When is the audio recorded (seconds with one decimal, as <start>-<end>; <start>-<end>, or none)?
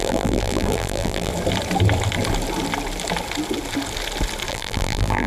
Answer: 1.3-4.5